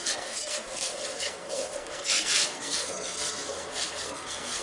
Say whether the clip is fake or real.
fake